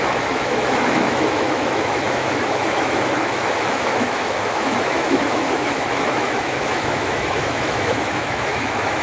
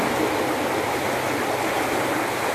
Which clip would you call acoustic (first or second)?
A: second